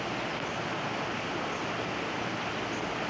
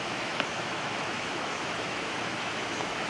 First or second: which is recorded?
first